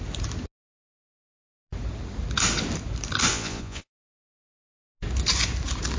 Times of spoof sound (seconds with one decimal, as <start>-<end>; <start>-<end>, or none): 3.3-3.9